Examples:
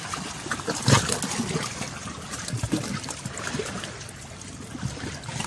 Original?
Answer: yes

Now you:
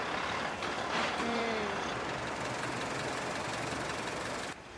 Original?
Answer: no